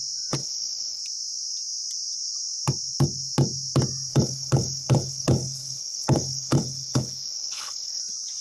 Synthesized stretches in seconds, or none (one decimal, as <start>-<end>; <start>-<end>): 0.4-1.0; 4.1-8.0